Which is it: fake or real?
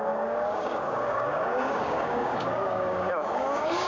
fake